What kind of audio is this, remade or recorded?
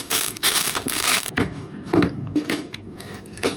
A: remade